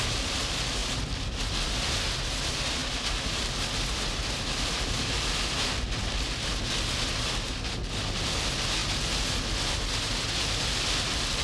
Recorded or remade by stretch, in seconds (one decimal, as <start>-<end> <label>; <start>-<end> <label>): 0.0-11.4 recorded